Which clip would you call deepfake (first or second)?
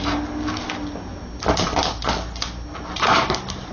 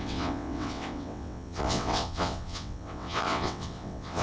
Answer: second